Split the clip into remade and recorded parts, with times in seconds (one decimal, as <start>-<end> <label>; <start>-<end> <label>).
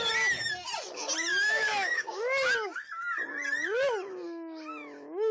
0.0-1.3 recorded; 1.3-2.2 remade; 2.2-5.3 recorded